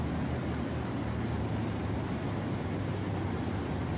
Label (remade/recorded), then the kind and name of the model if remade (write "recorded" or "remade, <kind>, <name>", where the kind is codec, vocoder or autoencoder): recorded